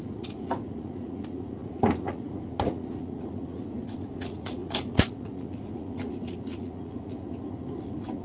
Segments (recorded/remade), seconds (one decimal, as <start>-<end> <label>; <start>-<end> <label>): 0.0-8.2 remade